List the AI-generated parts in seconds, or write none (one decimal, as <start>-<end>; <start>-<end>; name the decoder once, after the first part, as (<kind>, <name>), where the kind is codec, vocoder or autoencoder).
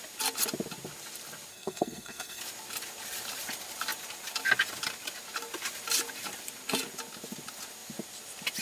1.5-2.4 (codec, SNAC)